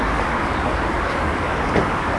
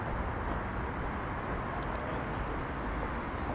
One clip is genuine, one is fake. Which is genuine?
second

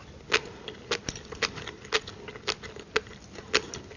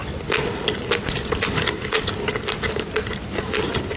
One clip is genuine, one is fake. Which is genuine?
first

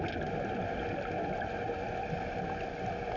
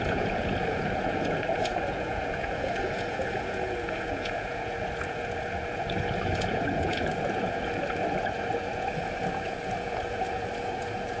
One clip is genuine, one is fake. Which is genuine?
first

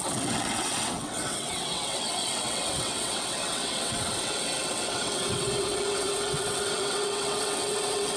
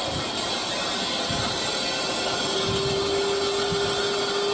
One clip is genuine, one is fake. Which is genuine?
second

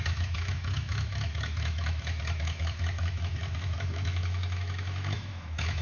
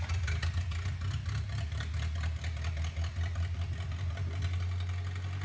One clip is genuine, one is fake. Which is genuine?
second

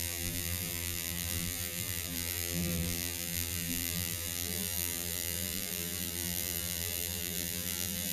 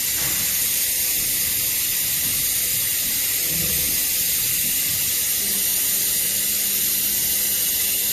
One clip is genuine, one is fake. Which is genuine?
second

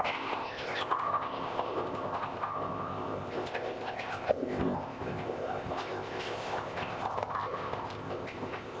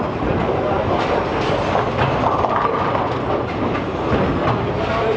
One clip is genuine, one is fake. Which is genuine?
second